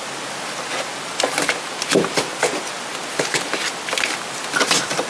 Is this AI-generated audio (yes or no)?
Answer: no